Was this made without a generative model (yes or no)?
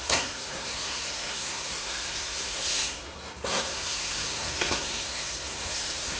no